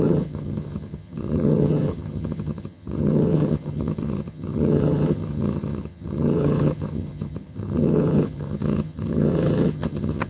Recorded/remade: remade